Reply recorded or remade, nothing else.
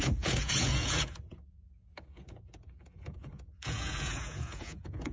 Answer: remade